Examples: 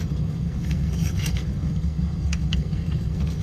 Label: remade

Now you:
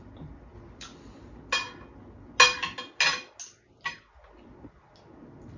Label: recorded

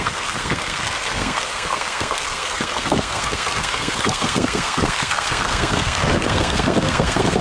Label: remade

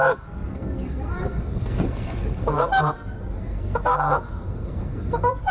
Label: remade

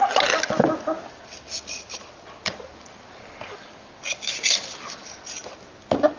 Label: recorded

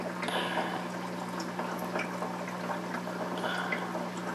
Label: recorded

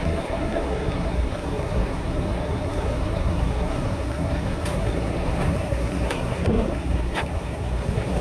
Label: remade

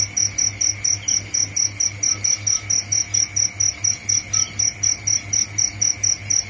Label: recorded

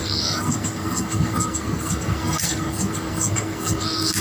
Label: remade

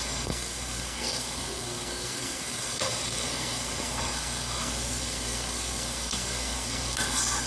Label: remade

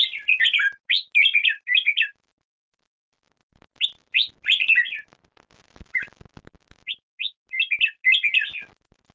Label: recorded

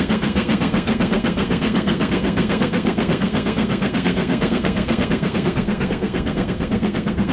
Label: remade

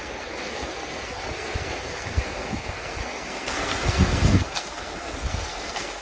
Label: remade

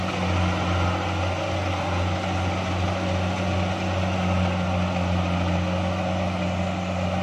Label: recorded